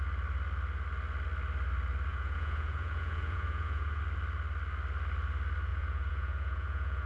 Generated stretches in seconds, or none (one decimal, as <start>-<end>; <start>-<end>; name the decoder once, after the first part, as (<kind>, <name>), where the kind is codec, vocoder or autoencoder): 2.1-4.0 (vocoder, Vocos); 5.7-7.1